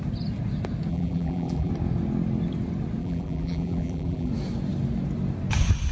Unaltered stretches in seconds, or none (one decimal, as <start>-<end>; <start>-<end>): 0.0-0.9; 1.7-3.0; 4.3-5.9